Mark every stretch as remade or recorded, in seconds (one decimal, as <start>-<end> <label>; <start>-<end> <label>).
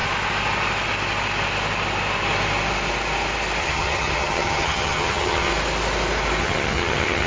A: 0.0-3.6 recorded; 3.6-5.5 remade; 5.5-6.4 recorded; 6.4-7.3 remade